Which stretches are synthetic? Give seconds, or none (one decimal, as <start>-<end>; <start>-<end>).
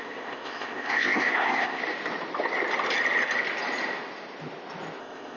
0.0-1.8; 5.0-5.4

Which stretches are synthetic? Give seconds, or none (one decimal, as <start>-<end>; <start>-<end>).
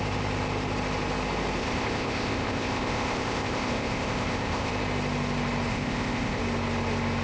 1.6-4.7; 5.7-6.4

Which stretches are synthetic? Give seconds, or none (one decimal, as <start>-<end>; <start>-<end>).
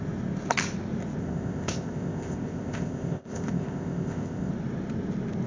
1.2-4.5